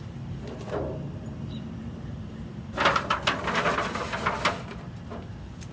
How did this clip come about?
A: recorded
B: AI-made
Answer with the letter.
A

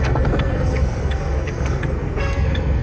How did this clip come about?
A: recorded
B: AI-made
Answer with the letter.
B